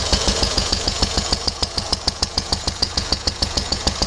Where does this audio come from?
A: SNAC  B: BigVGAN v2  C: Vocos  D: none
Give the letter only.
C